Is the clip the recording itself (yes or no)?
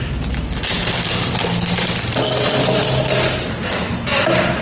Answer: yes